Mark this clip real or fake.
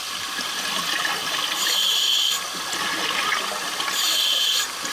real